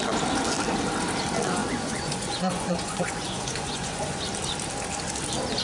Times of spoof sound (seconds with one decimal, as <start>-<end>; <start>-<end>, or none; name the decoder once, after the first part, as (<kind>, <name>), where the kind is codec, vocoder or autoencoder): 1.6-4.2 (vocoder, Vocos)

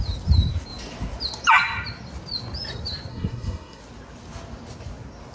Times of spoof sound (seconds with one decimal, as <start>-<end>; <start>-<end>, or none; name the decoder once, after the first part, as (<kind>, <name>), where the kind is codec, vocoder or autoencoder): 3.1-3.8 (codec, SNAC)

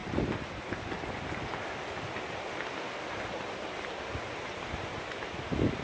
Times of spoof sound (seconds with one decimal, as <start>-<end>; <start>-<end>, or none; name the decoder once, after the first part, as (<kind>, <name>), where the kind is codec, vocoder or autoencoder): none